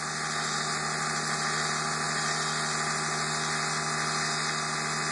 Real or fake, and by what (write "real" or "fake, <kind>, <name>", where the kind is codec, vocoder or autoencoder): real